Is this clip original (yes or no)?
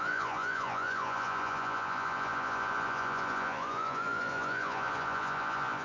no